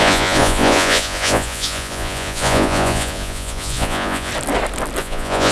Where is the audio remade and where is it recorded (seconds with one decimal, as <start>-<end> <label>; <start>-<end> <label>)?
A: 0.0-4.3 remade; 4.3-5.0 recorded; 5.0-5.5 remade